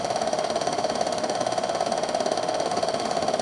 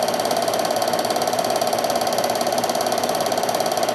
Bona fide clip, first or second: second